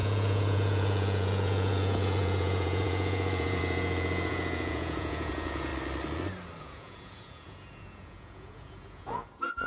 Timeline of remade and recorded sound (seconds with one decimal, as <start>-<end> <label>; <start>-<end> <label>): 0.0-5.7 remade; 5.7-6.6 recorded; 6.6-9.7 remade